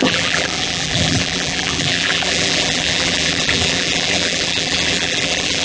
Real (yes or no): no